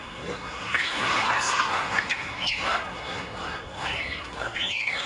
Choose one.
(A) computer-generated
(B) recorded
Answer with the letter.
A